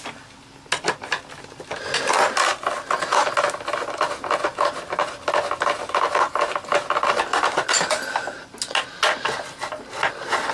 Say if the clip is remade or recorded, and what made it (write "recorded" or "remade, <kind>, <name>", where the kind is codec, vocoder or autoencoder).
recorded